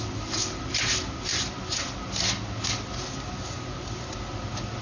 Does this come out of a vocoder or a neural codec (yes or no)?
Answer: no